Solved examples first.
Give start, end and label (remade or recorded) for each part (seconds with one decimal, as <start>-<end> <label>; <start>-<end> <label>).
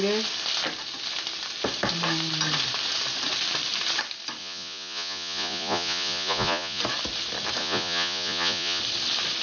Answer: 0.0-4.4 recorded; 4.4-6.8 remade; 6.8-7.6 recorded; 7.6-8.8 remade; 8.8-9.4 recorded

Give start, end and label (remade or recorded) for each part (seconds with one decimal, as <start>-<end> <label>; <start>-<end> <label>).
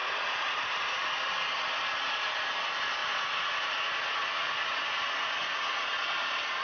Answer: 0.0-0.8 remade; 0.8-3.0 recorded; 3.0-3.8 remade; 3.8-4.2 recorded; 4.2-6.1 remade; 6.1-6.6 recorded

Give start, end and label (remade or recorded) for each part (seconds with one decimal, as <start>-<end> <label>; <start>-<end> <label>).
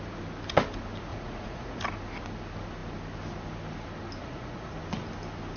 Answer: 0.0-1.1 recorded; 1.1-1.8 remade; 1.8-4.2 recorded; 4.2-4.8 remade; 4.8-5.6 recorded